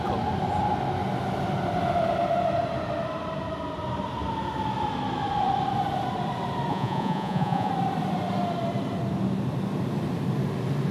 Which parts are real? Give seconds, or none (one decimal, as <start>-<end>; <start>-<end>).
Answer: 0.0-6.7; 7.7-10.9

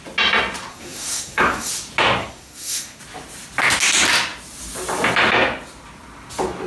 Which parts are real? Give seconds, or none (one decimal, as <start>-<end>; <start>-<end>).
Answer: 0.0-0.7; 1.7-2.2; 3.0-6.7